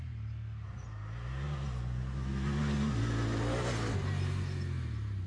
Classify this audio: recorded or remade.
recorded